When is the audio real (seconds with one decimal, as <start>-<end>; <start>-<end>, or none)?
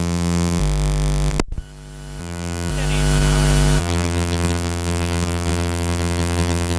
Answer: 0.6-2.2; 2.7-3.8